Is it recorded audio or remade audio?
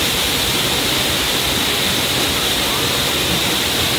recorded